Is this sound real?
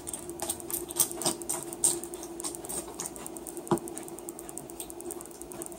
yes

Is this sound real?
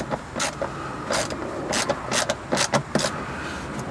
yes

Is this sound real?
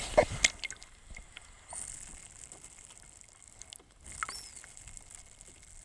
yes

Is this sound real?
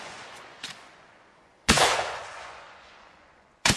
no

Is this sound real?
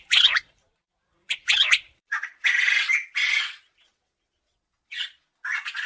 no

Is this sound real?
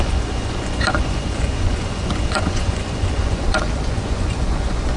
no